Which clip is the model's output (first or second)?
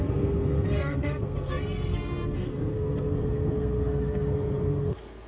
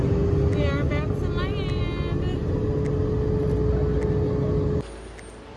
first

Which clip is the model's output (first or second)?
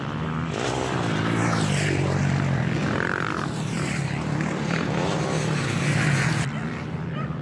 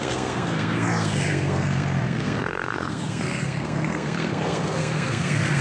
second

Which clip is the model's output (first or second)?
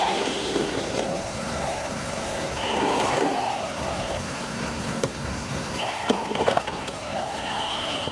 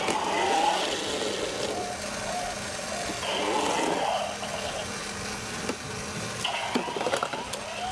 first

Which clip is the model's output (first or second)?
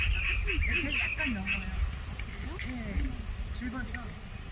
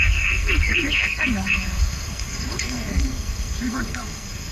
second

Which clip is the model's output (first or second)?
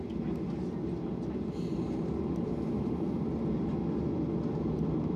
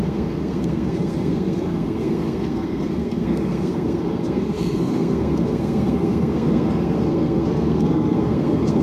second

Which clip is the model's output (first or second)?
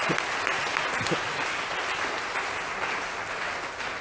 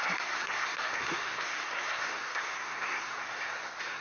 second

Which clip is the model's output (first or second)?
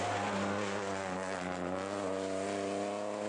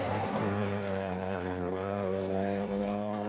second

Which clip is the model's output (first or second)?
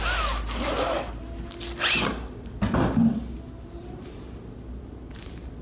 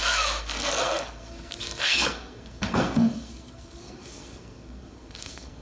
second